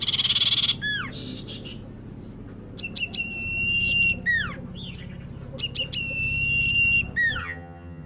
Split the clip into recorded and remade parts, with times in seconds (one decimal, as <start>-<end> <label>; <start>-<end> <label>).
0.0-7.4 recorded; 7.4-8.1 remade